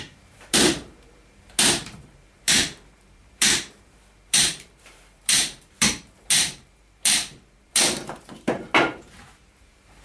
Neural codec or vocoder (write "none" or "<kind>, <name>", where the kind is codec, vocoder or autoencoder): vocoder, BigVGAN v2